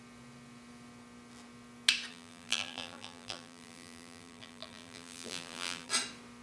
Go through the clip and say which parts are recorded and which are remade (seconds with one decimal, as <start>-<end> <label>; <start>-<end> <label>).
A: 0.0-2.1 recorded; 2.1-5.9 remade; 5.9-6.4 recorded